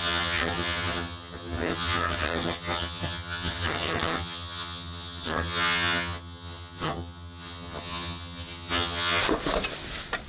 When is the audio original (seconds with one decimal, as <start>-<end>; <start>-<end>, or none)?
9.2-10.3

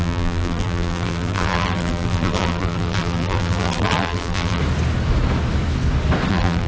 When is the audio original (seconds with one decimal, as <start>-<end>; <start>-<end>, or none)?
4.6-6.3

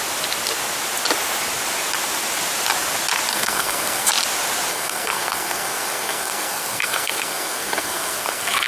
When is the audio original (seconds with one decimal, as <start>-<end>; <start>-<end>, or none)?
0.0-3.3; 4.1-4.7

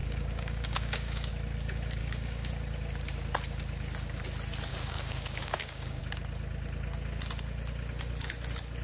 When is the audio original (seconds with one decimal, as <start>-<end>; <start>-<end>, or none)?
1.3-2.0; 2.5-4.7; 6.0-8.8

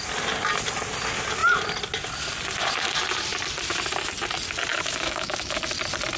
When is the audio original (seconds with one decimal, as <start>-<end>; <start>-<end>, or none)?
0.0-4.7; 5.6-6.2

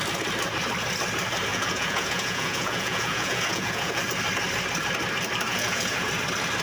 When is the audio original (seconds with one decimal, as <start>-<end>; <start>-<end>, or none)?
0.0-1.5; 4.0-5.5; 6.1-6.6

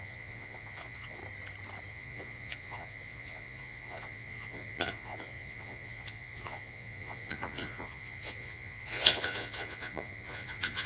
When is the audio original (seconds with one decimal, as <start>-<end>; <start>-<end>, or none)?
1.2-1.9

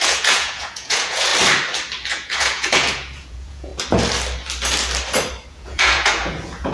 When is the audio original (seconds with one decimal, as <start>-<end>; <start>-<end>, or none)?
1.3-2.1; 3.7-5.5